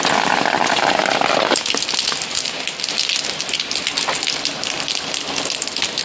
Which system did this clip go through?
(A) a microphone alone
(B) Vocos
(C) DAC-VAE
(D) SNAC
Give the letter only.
A